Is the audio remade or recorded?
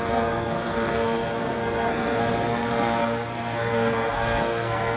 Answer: remade